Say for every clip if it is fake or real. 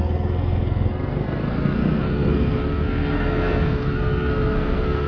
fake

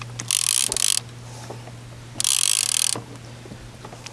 real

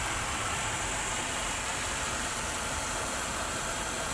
fake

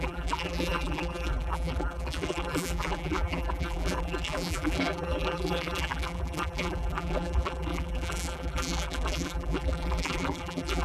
fake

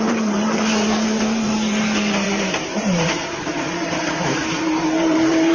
fake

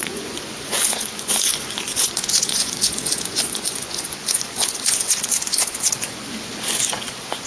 fake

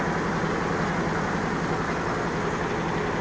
real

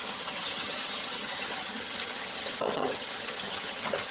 fake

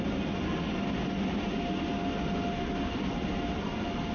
real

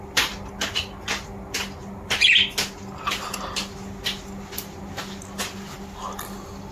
real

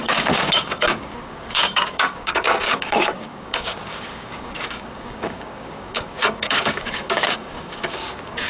fake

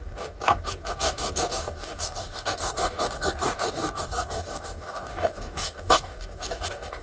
fake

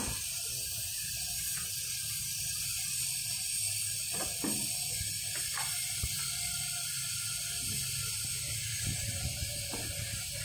real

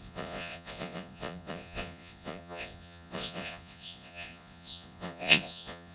fake